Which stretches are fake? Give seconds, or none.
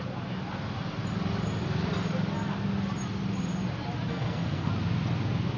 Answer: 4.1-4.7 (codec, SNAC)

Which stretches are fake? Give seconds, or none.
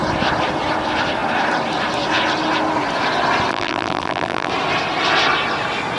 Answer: 3.5-4.5 (vocoder, BigVGAN v2)